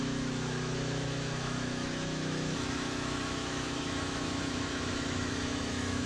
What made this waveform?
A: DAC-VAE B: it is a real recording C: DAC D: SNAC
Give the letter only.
A